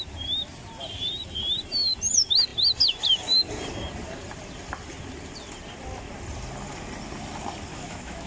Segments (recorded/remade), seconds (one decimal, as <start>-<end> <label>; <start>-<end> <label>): 0.0-7.7 recorded; 7.7-8.3 remade